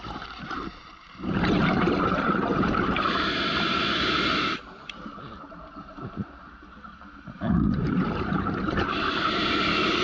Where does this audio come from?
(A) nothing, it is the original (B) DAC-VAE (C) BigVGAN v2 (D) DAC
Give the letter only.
C